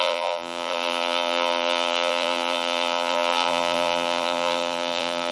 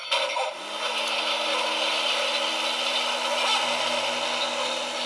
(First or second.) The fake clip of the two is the first